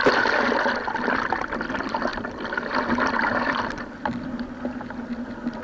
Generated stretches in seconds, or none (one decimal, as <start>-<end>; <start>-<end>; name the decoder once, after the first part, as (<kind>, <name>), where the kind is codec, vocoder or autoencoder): none

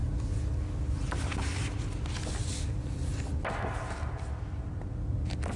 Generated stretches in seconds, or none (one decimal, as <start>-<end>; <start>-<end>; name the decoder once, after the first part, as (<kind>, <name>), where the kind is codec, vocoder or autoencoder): none

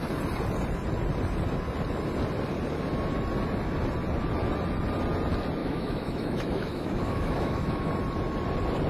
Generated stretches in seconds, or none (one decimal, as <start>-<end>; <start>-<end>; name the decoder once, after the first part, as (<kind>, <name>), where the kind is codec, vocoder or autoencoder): 5.6-7.9 (autoencoder, DAC-VAE)

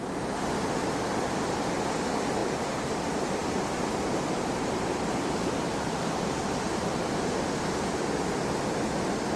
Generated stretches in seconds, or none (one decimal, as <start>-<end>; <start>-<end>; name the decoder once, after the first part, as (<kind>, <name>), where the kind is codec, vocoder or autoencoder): 2.4-3.0 (vocoder, BigVGAN v2); 3.4-6.9